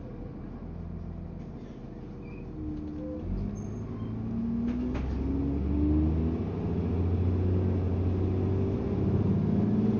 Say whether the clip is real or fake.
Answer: real